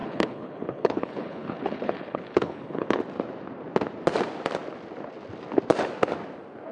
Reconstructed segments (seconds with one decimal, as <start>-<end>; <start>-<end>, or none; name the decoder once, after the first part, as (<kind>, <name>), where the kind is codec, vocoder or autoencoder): 0.0-3.0 (codec, HILCodec)